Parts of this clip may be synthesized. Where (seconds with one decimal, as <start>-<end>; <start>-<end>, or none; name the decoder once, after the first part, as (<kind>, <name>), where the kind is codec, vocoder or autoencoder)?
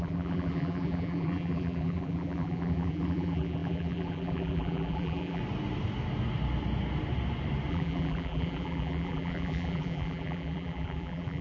0.0-5.4 (vocoder, BigVGAN v2); 7.7-11.4